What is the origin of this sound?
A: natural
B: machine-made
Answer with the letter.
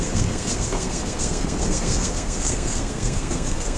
B